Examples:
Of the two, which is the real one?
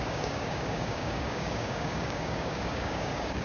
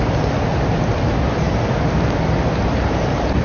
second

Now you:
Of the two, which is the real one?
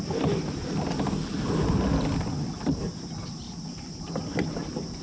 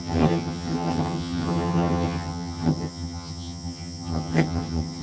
first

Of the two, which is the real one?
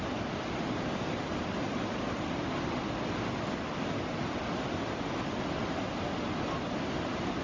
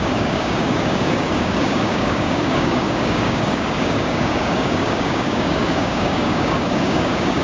first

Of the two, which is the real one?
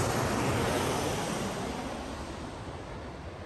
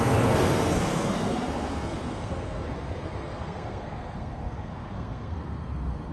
first